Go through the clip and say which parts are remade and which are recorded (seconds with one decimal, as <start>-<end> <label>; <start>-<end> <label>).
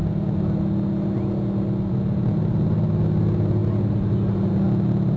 0.0-5.2 recorded